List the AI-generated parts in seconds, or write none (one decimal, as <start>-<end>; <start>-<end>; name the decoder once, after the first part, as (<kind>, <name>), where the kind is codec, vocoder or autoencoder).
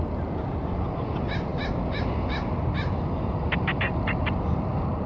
none